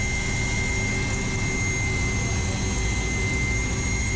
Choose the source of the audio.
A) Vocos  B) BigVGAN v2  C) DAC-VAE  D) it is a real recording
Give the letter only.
D